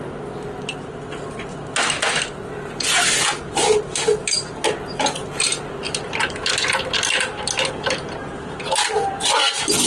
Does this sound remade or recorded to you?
recorded